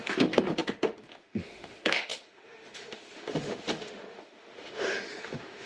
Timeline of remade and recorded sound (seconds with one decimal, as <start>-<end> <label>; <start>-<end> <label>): 0.0-5.7 remade